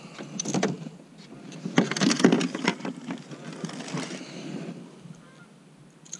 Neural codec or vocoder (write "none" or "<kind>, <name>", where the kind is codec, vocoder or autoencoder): none